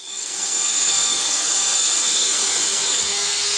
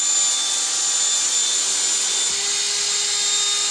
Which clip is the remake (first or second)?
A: first